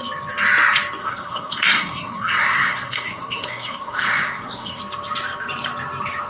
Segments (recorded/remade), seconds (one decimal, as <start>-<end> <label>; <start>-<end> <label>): 0.0-1.0 recorded; 1.0-4.8 remade; 4.8-6.3 recorded